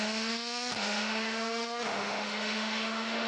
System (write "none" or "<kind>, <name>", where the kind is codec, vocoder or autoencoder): autoencoder, DAC-VAE